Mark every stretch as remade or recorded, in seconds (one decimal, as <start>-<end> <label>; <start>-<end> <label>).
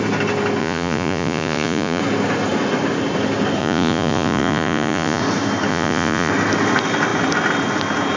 0.0-0.6 recorded; 0.6-2.0 remade; 2.0-3.6 recorded; 3.6-5.2 remade; 5.2-5.7 recorded; 5.7-6.3 remade; 6.3-8.2 recorded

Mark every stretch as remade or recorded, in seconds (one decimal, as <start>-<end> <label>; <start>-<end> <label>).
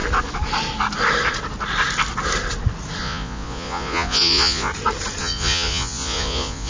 0.0-3.0 recorded; 3.0-4.7 remade; 4.7-5.2 recorded; 5.2-6.7 remade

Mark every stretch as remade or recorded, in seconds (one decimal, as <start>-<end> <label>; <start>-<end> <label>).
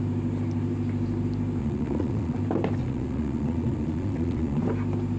0.0-1.6 recorded; 1.6-2.4 remade; 2.4-2.8 recorded; 2.8-4.6 remade; 4.6-5.2 recorded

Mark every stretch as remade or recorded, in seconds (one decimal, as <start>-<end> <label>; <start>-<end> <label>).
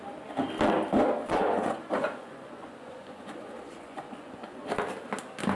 0.0-1.2 recorded; 1.2-4.6 remade; 4.6-5.6 recorded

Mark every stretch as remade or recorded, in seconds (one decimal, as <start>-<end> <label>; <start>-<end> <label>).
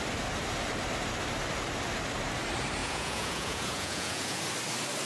0.0-2.8 recorded; 2.8-4.4 remade; 4.4-5.1 recorded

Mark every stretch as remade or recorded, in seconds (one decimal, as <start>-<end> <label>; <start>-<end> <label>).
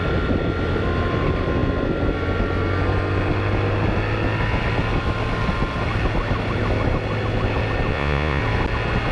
0.0-7.9 recorded; 7.9-8.4 remade; 8.4-9.1 recorded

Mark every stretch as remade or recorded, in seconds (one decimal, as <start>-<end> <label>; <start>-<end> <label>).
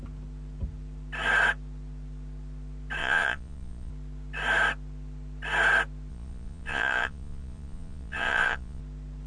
0.0-3.0 recorded; 3.0-3.9 remade; 3.9-6.1 recorded; 6.1-8.8 remade; 8.8-9.3 recorded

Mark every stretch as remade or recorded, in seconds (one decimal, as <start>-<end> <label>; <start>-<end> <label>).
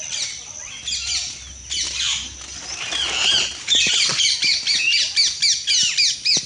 0.0-6.5 recorded